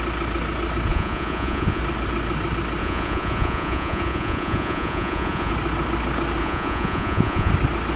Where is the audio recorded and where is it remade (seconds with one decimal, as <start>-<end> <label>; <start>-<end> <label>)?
0.0-0.9 recorded; 0.9-1.8 remade; 1.8-2.8 recorded; 2.8-5.5 remade; 5.5-6.4 recorded; 6.4-7.5 remade; 7.5-8.0 recorded